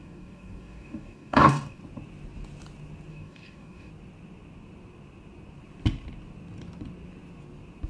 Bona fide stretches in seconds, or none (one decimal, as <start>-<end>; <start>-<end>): 1.8-3.1; 3.9-7.9